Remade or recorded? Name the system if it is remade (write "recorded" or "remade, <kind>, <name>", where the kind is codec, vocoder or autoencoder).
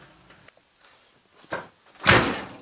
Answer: recorded